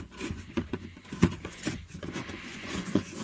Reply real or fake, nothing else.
fake